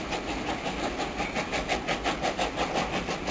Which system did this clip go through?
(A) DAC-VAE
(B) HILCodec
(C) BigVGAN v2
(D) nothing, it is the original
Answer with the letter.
D